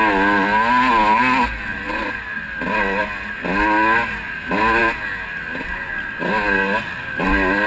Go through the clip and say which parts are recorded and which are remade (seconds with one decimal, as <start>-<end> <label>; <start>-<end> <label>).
0.0-7.7 recorded